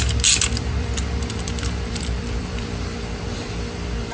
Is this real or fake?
fake